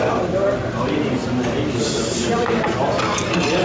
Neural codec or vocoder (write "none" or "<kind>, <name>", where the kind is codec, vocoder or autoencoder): none